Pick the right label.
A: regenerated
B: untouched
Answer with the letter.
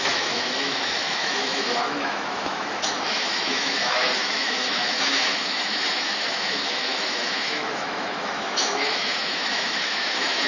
A